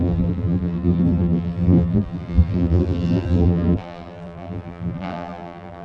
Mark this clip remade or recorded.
remade